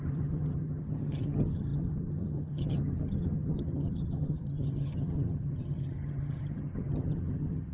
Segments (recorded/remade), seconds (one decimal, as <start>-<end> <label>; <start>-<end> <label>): 0.0-7.7 remade